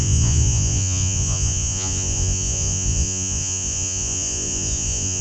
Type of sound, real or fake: fake